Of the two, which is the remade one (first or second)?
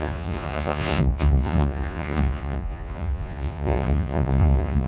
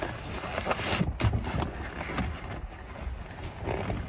first